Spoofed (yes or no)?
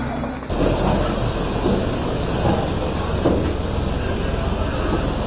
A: no